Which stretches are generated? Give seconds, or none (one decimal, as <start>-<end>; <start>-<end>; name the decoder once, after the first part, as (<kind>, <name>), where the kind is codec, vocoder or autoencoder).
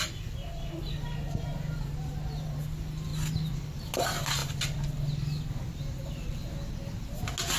none